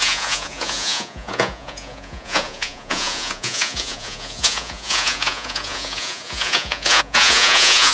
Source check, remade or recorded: remade